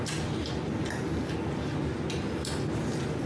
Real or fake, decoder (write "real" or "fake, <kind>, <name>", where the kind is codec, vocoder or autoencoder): real